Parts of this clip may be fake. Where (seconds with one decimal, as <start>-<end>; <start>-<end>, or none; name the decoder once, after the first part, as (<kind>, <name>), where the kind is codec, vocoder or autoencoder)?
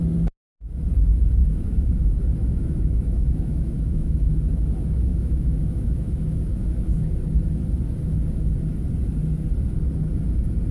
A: 1.4-2.0 (autoencoder, DAC-VAE); 2.4-4.3; 5.1-7.1